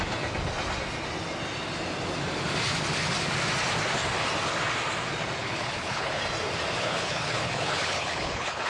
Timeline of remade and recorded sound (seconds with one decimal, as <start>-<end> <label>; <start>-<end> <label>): 0.0-5.4 recorded; 5.4-6.2 remade; 6.2-6.8 recorded; 6.8-8.7 remade